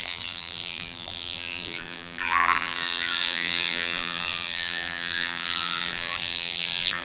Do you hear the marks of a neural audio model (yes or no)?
yes